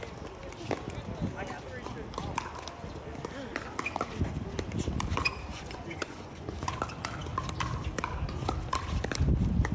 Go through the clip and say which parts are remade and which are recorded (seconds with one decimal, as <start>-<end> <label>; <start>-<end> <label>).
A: 0.0-5.5 recorded; 5.5-6.7 remade; 6.7-9.7 recorded